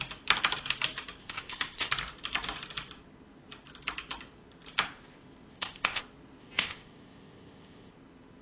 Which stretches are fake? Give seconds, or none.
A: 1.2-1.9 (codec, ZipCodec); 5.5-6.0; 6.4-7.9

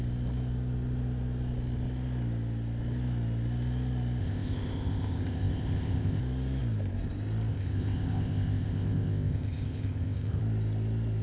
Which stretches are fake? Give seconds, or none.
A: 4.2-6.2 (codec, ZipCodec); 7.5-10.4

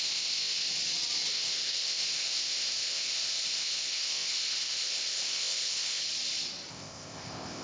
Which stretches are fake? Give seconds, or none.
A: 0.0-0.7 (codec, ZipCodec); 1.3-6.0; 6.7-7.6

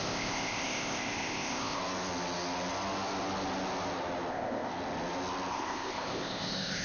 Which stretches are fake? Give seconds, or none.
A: 0.0-1.8 (codec, ZipCodec); 4.3-4.7; 5.5-6.8

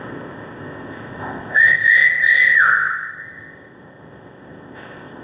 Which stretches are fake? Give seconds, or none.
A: 0.0-5.2 (codec, ZipCodec)

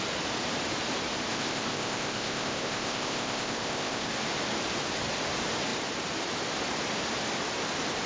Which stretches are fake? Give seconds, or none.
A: 1.3-4.1 (codec, ZipCodec)